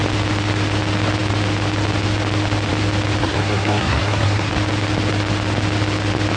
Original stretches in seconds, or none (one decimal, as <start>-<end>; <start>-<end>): 0.0-3.2; 4.5-6.4